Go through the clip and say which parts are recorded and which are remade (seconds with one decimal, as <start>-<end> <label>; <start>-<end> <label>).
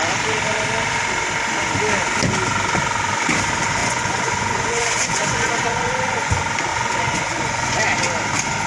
0.0-3.8 recorded; 3.8-6.3 remade; 6.3-6.7 recorded; 6.7-7.8 remade; 7.8-8.7 recorded